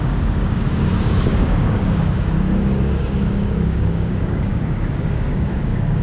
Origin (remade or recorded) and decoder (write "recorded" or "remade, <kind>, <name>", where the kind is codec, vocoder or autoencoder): remade, codec, DAC